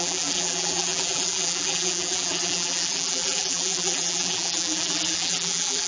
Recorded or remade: remade